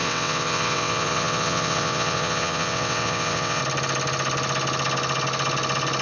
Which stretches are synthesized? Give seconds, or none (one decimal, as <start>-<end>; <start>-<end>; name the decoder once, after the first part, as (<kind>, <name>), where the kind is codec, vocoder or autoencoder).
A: 0.0-3.6 (vocoder, WaveNeXt)